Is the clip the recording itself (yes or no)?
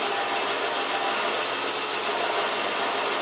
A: yes